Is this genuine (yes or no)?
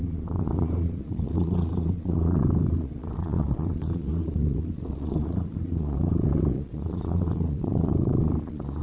no